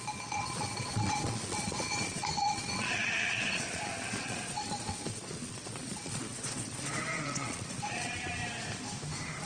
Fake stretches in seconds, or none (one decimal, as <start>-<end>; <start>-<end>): 0.0-8.4